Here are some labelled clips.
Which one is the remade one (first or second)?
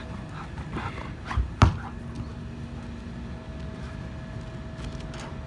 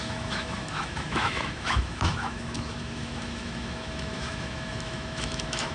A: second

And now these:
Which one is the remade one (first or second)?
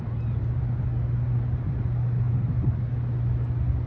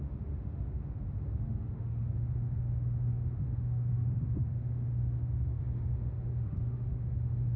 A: second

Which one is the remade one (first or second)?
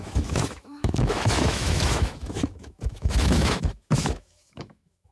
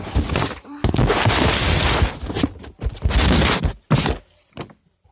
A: first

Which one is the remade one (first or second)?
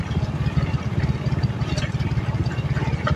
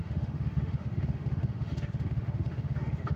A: second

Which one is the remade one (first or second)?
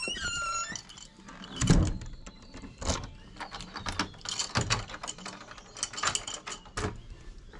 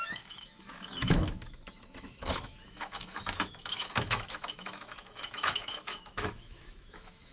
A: second